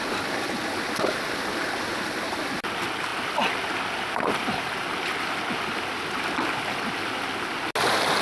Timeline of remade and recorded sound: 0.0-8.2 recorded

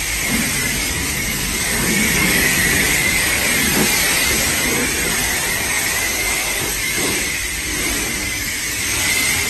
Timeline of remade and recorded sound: 0.0-0.6 recorded; 0.6-3.4 remade; 3.4-5.5 recorded; 5.5-6.9 remade; 6.9-8.2 recorded; 8.2-9.1 remade; 9.1-9.5 recorded

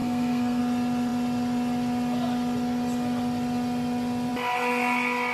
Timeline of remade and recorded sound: 0.0-0.6 remade; 0.6-5.3 recorded

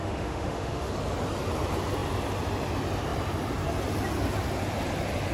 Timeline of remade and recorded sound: 0.0-0.9 remade; 0.9-5.3 recorded

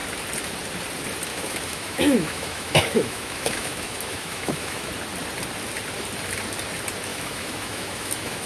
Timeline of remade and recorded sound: 0.0-1.3 recorded; 1.3-4.9 remade; 4.9-7.1 recorded; 7.1-8.5 remade

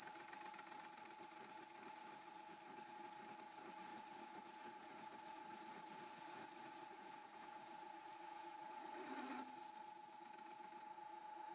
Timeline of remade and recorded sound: 0.0-3.9 recorded; 3.9-9.0 remade; 9.0-11.5 recorded